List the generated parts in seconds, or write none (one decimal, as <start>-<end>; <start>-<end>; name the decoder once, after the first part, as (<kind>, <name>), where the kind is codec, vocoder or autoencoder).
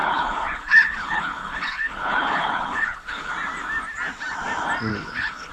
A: 0.0-3.3 (codec, HILCodec); 4.9-5.5